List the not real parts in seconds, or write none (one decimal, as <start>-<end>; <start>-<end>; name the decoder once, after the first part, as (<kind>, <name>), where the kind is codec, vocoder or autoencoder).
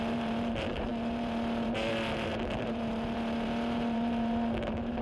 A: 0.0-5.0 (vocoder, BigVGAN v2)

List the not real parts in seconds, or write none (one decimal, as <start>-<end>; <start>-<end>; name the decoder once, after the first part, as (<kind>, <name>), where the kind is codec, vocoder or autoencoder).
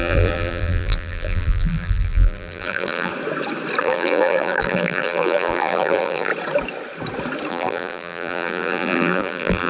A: 0.0-3.1 (vocoder, BigVGAN v2); 3.8-6.3; 7.5-9.7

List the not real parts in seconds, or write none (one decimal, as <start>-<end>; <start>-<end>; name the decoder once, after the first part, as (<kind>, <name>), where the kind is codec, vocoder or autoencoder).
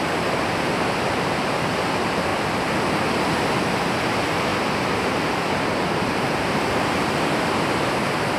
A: 0.0-2.3 (vocoder, BigVGAN v2); 3.6-4.5; 5.2-8.4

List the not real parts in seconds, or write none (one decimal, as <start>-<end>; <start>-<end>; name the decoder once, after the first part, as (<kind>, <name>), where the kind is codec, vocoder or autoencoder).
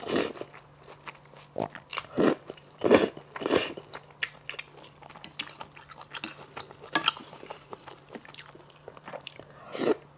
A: 1.9-2.8 (vocoder, BigVGAN v2); 7.2-9.6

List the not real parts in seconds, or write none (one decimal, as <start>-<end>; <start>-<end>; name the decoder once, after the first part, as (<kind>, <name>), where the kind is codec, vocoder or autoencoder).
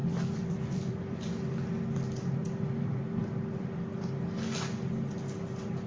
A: 0.0-1.5 (vocoder, BigVGAN v2); 2.4-3.2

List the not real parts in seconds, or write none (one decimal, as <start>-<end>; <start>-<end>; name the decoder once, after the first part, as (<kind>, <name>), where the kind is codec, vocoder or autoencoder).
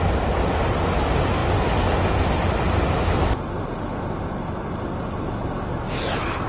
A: none